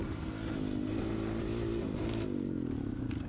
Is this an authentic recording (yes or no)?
yes